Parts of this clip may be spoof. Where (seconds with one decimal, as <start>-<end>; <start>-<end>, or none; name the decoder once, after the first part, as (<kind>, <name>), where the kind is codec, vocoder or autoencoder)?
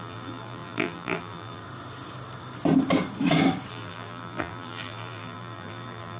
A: 0.0-1.6 (vocoder, BigVGAN v2); 3.7-6.2